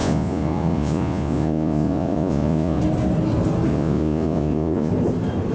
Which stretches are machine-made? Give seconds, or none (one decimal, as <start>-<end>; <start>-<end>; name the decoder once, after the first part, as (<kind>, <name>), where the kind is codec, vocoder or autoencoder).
0.0-2.8 (vocoder, Vocos); 3.7-4.9